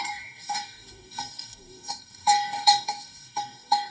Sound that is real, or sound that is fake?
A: fake